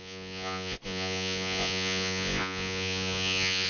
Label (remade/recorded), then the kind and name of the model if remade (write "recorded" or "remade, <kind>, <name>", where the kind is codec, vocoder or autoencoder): remade, vocoder, Vocos